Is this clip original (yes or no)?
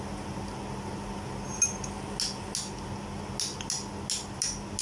yes